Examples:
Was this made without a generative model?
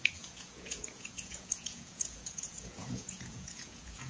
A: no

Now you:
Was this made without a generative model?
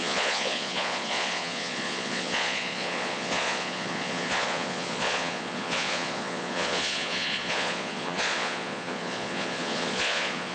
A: no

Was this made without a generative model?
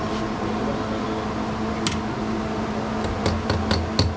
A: yes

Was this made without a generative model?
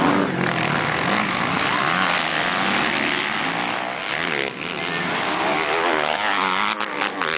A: yes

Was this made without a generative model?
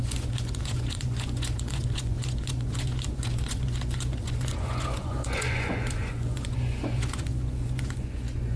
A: no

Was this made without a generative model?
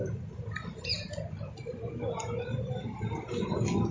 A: yes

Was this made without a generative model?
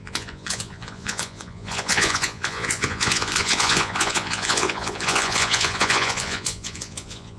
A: no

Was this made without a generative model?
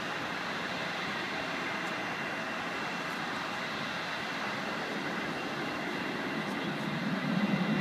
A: yes